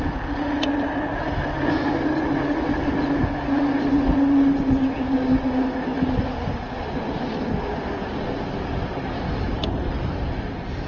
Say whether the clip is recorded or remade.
recorded